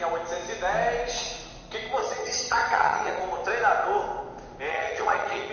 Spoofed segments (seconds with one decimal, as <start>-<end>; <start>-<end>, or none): 2.0-3.2; 4.7-5.5